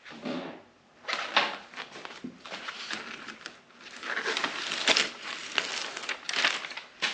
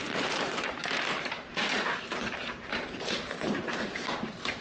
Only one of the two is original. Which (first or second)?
first